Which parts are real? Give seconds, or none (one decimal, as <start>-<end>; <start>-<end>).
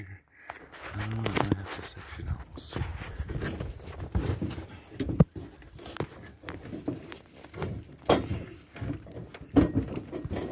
0.0-2.9; 7.9-10.5